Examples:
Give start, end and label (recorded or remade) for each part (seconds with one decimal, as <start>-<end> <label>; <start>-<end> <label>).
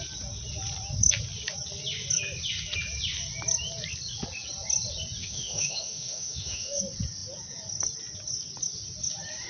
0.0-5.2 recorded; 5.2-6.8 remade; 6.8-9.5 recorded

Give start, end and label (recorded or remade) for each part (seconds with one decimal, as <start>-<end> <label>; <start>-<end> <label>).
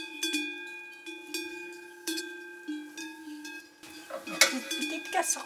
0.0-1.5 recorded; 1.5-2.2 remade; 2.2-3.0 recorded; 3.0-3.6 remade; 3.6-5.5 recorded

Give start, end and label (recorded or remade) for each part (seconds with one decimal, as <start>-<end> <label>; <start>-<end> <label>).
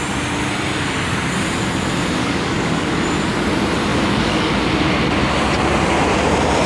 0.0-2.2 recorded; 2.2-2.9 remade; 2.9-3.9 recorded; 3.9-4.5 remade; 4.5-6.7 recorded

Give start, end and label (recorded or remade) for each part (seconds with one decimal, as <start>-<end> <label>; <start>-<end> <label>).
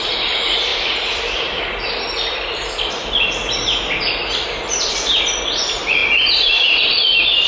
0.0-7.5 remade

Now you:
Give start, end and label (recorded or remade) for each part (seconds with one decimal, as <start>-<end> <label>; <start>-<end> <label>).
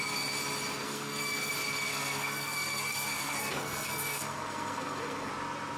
0.0-0.8 recorded; 0.8-1.5 remade; 1.5-1.9 recorded; 1.9-5.3 remade; 5.3-5.8 recorded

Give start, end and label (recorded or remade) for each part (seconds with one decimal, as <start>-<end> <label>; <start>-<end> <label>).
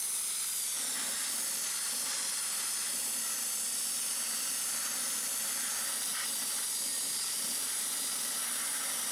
0.0-9.1 recorded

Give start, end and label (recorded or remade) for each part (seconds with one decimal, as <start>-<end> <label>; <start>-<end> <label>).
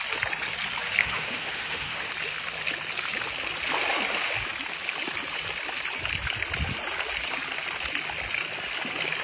0.0-1.0 recorded; 1.0-2.1 remade; 2.1-9.2 recorded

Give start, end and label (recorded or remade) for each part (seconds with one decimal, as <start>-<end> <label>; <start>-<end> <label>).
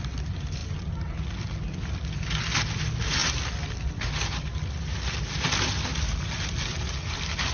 0.0-7.5 recorded